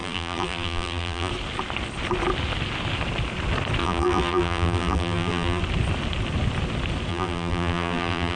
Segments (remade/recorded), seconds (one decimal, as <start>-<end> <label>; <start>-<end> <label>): 0.0-1.3 remade; 1.3-3.8 recorded; 3.8-5.6 remade; 5.6-7.1 recorded; 7.1-8.4 remade